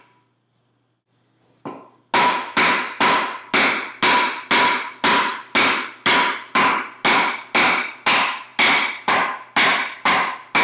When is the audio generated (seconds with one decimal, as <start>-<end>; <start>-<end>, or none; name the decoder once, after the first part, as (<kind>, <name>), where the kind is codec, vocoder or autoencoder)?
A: none